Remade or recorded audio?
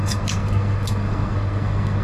remade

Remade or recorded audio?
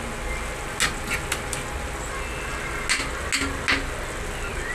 recorded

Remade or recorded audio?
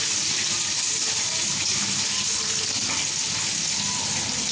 recorded